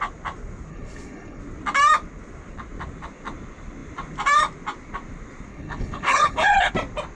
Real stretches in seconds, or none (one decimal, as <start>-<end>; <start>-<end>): 0.0-0.7; 1.4-5.5; 6.7-7.2